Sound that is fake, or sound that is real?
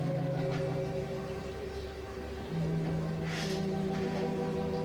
real